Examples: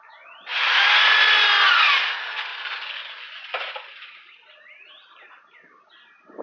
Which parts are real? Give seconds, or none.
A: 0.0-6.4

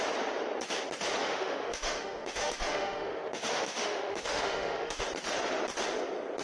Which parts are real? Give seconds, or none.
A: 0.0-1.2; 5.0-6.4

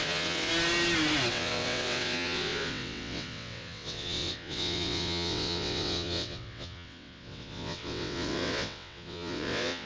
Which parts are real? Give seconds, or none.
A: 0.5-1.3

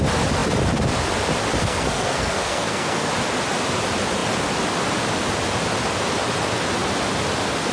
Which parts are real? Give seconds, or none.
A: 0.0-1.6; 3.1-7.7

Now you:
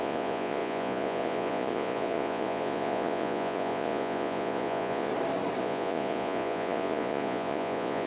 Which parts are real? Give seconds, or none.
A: 5.1-5.6

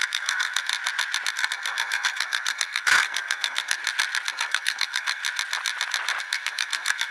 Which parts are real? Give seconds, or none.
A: 0.7-1.3; 3.8-4.3; 5.2-6.2